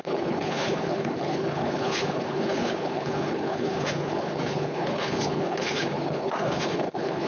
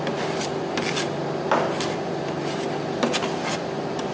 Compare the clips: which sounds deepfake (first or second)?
first